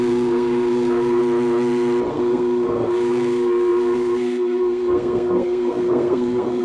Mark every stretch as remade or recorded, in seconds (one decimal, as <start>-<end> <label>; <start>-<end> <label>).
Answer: 0.0-1.2 remade; 1.2-2.1 recorded; 2.1-6.6 remade